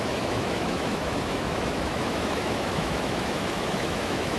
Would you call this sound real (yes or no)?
no